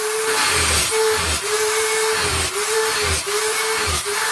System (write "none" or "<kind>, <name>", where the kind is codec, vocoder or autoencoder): vocoder, BigVGAN v2